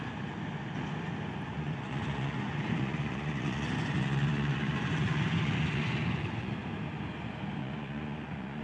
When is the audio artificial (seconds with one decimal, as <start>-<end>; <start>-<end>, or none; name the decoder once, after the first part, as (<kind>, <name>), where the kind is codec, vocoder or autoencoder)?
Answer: 1.5-6.6 (vocoder, Vocos); 7.6-8.6